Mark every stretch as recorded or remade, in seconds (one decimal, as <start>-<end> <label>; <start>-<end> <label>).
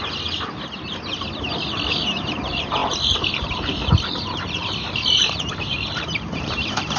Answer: 0.0-2.0 recorded; 2.0-7.0 remade